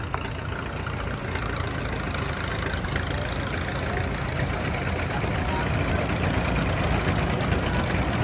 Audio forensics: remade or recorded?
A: recorded